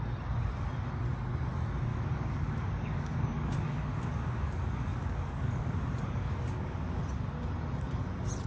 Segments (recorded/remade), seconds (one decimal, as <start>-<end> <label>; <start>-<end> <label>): 0.0-1.9 recorded; 1.9-7.0 remade; 7.0-8.5 recorded